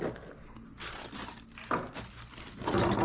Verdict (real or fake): real